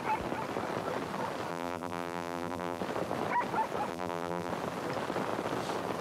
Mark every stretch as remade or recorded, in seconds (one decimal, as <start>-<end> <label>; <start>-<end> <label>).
0.0-1.5 recorded; 1.5-2.8 remade; 2.8-3.9 recorded; 3.9-4.5 remade; 4.5-6.0 recorded